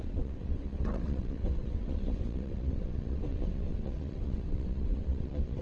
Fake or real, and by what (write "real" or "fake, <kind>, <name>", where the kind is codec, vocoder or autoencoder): fake, vocoder, WaveNeXt